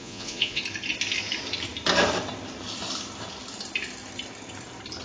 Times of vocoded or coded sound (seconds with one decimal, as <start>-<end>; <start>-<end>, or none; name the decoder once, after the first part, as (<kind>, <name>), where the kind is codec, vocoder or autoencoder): 0.0-0.6 (vocoder, Vocos)